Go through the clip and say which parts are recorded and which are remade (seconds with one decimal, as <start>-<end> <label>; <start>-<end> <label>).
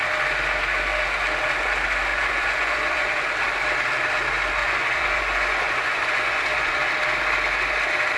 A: 0.0-2.1 recorded; 2.1-3.2 remade; 3.2-4.6 recorded; 4.6-6.9 remade; 6.9-8.2 recorded